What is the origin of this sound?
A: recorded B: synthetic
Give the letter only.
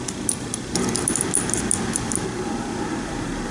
A